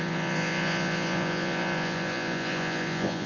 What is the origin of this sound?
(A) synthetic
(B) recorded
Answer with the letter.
A